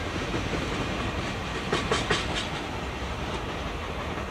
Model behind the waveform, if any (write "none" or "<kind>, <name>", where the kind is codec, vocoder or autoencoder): none